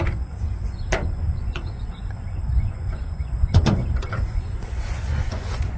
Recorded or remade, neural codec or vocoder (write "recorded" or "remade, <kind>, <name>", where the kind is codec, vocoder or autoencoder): remade, vocoder, Vocos